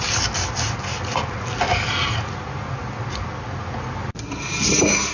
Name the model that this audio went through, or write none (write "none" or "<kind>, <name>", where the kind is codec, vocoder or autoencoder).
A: none